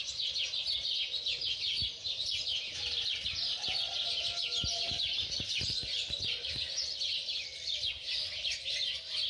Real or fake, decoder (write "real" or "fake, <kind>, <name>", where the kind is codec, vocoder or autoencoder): real